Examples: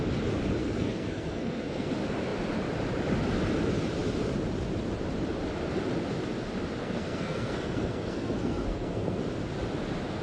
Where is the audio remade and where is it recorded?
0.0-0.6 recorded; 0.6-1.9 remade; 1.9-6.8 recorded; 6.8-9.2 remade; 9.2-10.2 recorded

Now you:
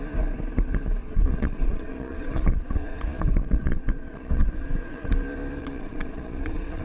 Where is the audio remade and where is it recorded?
0.0-1.0 recorded; 1.0-5.1 remade; 5.1-5.6 recorded; 5.6-6.8 remade